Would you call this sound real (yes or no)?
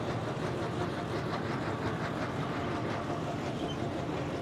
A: yes